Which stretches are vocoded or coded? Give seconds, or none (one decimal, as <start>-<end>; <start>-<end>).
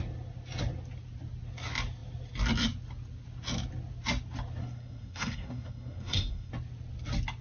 4.6-6.5